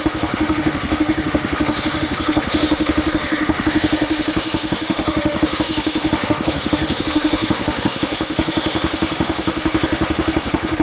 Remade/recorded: remade